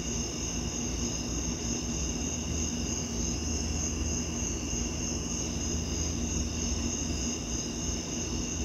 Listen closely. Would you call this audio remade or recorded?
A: recorded